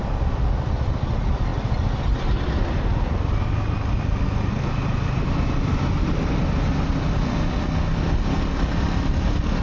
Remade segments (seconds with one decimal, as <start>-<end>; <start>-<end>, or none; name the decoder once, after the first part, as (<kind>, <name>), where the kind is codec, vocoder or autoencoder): none